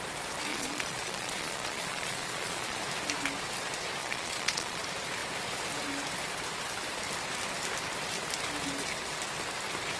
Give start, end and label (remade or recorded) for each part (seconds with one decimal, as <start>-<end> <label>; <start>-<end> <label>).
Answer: 0.0-0.5 recorded; 0.5-2.8 remade; 2.8-4.0 recorded; 4.0-4.8 remade; 4.8-10.0 recorded